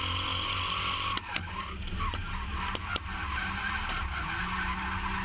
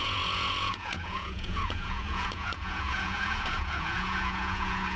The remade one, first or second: second